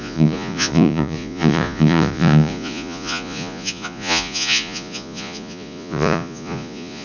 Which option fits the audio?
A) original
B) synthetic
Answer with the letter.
B